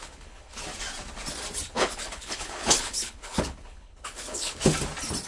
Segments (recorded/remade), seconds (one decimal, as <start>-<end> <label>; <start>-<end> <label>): 0.0-0.6 remade; 0.6-1.7 recorded; 1.7-4.6 remade; 4.6-5.3 recorded